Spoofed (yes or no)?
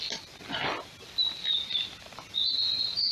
no